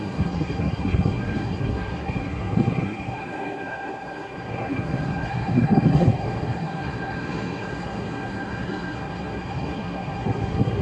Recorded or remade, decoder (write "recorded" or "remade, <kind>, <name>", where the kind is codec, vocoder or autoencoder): remade, codec, SNAC